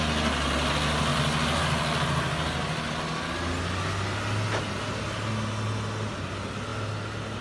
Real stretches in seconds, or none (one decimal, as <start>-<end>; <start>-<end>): 0.0-7.4